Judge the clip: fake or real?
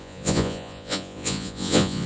fake